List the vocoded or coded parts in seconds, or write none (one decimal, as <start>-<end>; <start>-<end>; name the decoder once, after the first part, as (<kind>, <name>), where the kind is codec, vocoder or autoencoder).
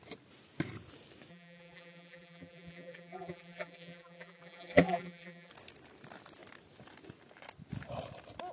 1.3-5.5 (vocoder, BigVGAN v2)